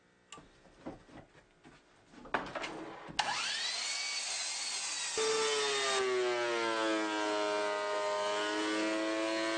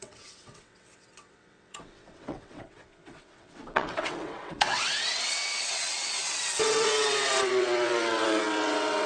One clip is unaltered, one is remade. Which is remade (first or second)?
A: second